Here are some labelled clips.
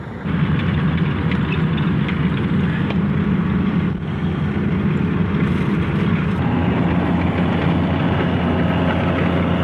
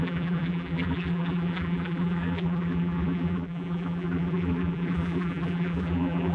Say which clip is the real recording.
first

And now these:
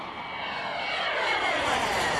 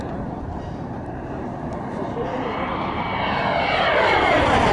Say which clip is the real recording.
first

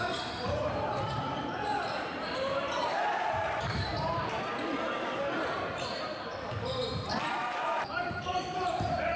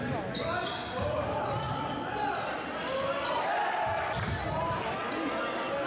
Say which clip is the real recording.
second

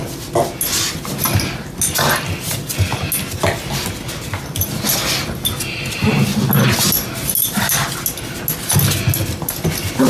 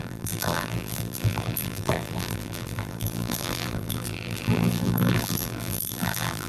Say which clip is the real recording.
first